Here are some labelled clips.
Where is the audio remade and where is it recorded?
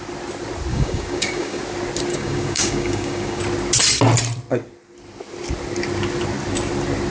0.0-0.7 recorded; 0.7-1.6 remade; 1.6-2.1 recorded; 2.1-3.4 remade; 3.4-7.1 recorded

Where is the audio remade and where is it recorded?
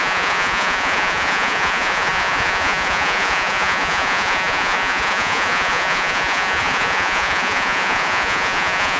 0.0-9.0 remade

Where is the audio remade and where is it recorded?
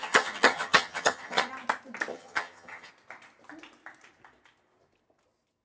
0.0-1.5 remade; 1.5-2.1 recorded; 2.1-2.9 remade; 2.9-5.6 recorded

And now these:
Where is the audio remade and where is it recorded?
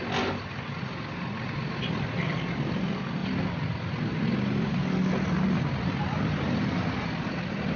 0.0-7.8 recorded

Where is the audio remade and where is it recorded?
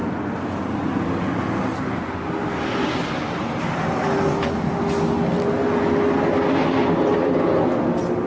0.0-8.3 recorded